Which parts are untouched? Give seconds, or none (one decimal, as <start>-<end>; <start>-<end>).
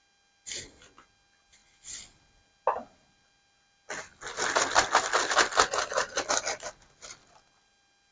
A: 0.0-8.1